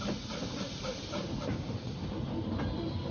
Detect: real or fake fake